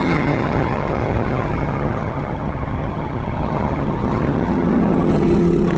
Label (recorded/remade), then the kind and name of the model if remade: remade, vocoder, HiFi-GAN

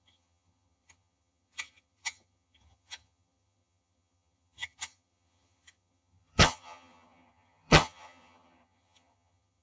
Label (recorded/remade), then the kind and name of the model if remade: remade, vocoder, HiFi-GAN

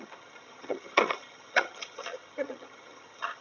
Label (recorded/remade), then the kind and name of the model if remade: remade, vocoder, HiFi-GAN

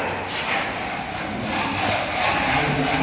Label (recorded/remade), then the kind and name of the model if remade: recorded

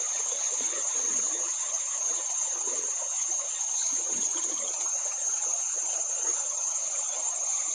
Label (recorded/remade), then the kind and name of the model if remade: remade, vocoder, HiFi-GAN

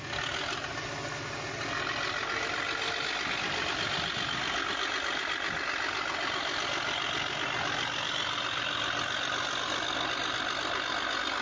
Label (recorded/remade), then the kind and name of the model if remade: recorded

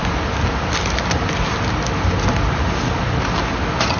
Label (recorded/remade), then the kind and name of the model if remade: recorded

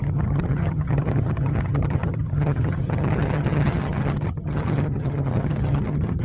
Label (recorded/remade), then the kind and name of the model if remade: remade, vocoder, HiFi-GAN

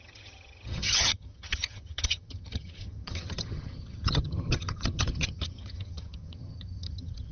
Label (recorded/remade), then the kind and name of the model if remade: remade, vocoder, HiFi-GAN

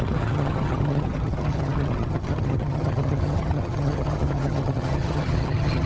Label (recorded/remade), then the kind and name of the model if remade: remade, vocoder, HiFi-GAN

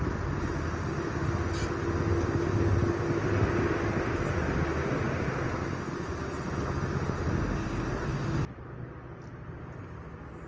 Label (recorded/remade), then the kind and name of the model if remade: recorded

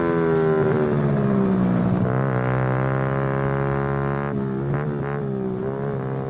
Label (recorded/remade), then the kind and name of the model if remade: recorded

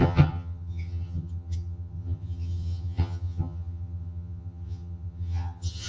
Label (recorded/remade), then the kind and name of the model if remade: remade, vocoder, HiFi-GAN